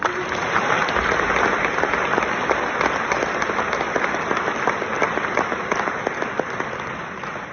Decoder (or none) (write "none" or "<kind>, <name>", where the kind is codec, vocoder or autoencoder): none